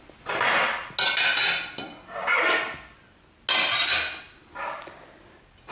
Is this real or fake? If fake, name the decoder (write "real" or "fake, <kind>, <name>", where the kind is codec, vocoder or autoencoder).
real